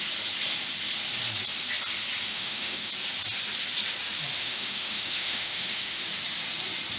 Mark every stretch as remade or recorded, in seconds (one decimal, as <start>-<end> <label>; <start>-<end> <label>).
0.0-2.3 recorded; 2.3-2.9 remade; 2.9-4.4 recorded; 4.4-6.0 remade; 6.0-7.0 recorded